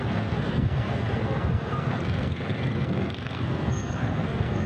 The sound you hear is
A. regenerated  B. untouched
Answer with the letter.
A